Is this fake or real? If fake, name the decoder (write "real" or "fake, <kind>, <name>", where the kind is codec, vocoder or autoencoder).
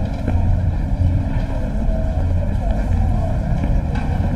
real